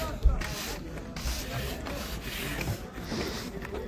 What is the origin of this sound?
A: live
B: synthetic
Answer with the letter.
A